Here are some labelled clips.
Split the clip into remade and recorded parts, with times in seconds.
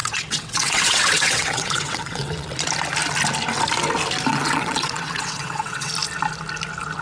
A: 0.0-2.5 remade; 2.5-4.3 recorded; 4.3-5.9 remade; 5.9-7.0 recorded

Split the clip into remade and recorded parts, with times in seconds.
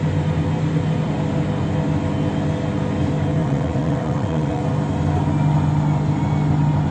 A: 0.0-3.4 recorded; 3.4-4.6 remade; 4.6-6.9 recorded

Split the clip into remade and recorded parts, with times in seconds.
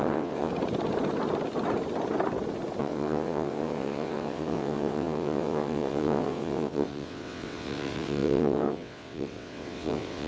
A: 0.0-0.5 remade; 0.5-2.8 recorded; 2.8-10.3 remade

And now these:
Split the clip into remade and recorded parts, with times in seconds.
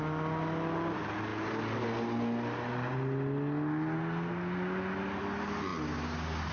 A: 0.0-6.5 recorded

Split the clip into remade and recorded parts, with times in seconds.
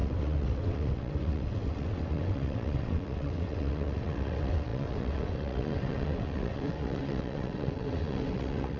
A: 0.0-8.8 remade